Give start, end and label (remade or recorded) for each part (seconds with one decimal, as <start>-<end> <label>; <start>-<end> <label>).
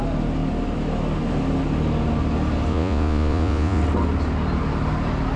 0.0-2.7 recorded; 2.7-3.8 remade; 3.8-5.4 recorded